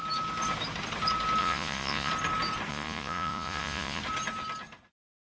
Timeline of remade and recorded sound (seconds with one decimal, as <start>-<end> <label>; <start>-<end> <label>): 0.0-1.4 recorded; 1.4-2.1 remade; 2.1-2.7 recorded; 2.7-4.0 remade; 4.0-5.2 recorded